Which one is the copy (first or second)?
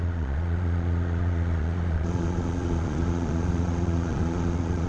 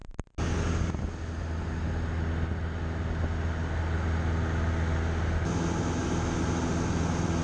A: first